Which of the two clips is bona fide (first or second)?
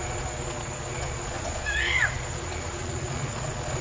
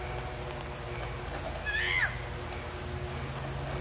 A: second